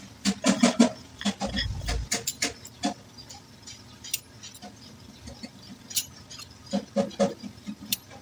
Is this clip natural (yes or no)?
yes